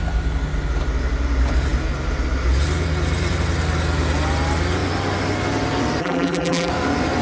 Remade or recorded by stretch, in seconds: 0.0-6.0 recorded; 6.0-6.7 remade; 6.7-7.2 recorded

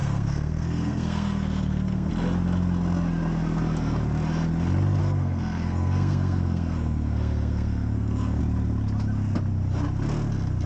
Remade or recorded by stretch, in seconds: 0.0-2.1 remade; 2.1-5.0 recorded; 5.0-8.4 remade; 8.4-10.7 recorded

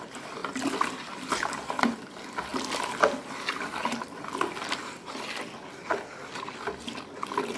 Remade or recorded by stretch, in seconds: 0.0-7.6 recorded